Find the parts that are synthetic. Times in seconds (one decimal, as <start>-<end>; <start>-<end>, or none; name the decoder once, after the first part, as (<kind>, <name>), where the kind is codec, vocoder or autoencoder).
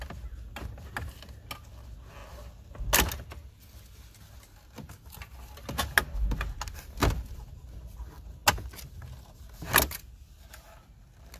none